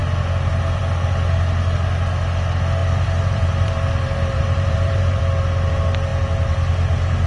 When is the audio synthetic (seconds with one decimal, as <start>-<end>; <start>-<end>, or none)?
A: 2.8-5.2